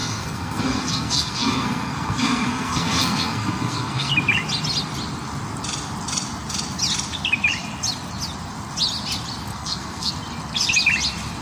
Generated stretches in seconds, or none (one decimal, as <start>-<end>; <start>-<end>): 0.0-4.1; 9.5-10.1